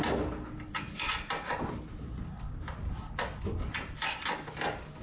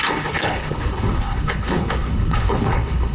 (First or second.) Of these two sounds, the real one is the first